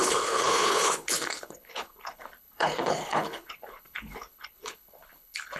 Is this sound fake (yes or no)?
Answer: yes